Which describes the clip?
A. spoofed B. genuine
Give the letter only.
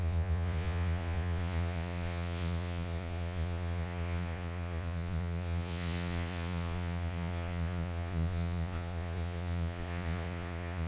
A